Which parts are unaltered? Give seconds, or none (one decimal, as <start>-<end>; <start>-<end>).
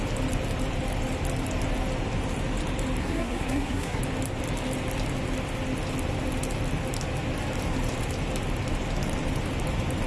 0.0-3.0; 4.0-10.1